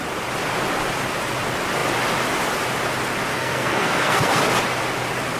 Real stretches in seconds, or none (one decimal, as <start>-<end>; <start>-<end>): 0.0-3.3; 4.4-5.4